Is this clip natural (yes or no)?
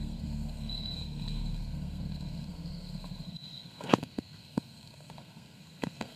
no